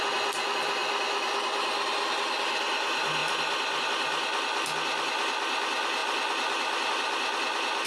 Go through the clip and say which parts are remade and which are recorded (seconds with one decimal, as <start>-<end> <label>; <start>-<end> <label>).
0.0-7.9 recorded